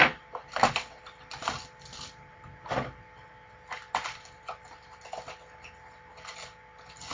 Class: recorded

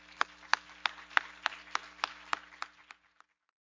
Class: recorded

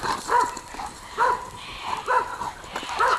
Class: recorded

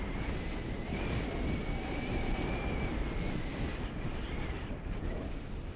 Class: recorded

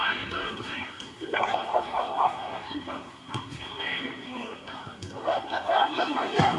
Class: remade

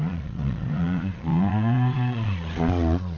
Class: remade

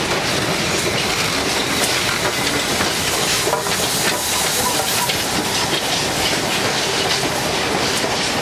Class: recorded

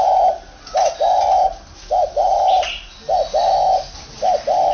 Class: recorded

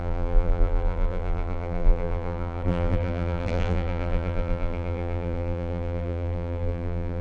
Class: remade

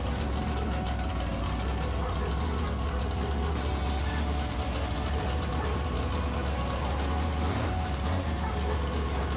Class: recorded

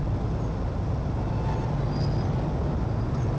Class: recorded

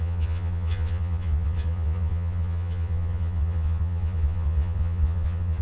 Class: remade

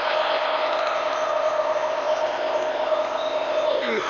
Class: remade